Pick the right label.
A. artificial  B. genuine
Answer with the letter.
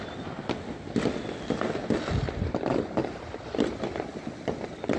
B